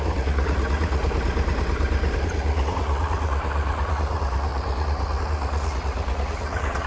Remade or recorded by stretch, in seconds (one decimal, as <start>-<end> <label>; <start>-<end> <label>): 0.0-1.0 remade; 1.0-2.2 recorded; 2.2-6.9 remade